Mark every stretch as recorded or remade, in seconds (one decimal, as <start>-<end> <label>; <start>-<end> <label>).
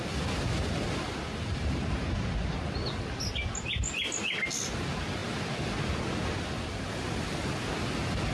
0.0-8.3 recorded